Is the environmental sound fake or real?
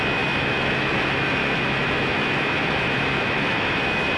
fake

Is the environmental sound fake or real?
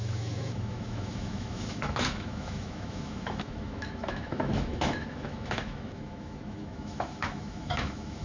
fake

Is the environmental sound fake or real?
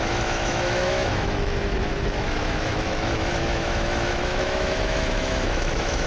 fake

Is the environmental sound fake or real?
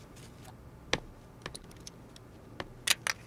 real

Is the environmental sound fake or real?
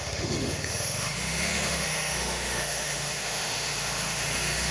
fake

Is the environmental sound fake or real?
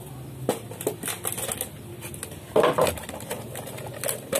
real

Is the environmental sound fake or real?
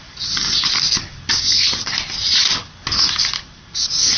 real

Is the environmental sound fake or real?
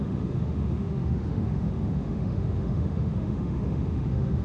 fake